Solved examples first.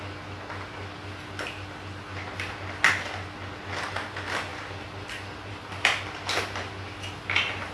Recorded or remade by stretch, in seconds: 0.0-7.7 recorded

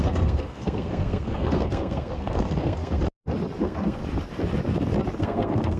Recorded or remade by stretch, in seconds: 0.0-3.0 remade; 3.0-3.6 recorded; 3.6-4.0 remade; 4.0-5.2 recorded; 5.2-5.8 remade

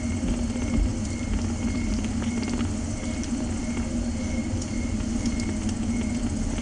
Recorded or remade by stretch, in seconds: 0.0-6.6 recorded

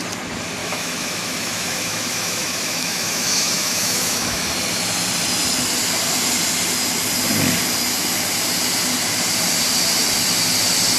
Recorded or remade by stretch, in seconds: 0.0-0.6 recorded; 0.6-4.4 remade; 4.4-11.0 recorded